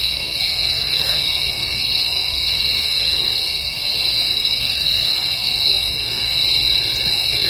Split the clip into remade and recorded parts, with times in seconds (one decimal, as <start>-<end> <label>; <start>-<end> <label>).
0.0-6.4 remade; 6.4-7.1 recorded; 7.1-7.5 remade